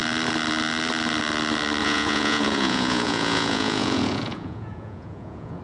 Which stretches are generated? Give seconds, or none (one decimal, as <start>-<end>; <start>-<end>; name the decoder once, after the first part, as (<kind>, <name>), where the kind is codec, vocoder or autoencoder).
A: 1.8-5.6 (vocoder, Vocos)